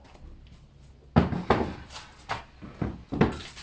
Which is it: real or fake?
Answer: real